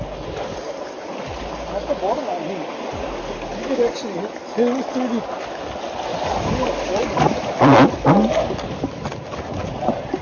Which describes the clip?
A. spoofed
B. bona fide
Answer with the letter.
B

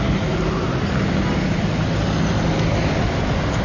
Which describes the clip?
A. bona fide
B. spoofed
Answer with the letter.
A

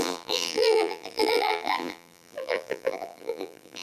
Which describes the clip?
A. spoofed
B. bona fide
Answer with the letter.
A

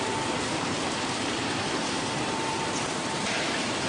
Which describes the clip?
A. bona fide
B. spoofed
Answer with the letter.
B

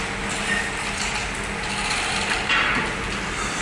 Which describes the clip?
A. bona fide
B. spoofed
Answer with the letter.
A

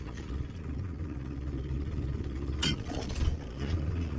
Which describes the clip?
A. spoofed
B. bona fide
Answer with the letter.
A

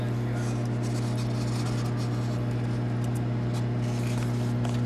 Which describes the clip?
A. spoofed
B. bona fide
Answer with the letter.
B